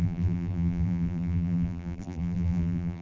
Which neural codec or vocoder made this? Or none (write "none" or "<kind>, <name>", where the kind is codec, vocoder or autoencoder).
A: vocoder, BigVGAN v2